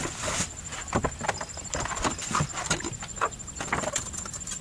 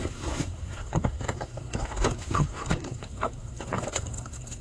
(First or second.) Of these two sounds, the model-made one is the second